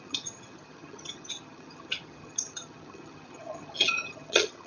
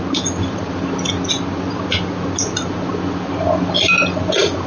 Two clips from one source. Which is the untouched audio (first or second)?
second